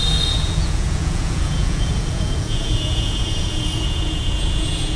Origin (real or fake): fake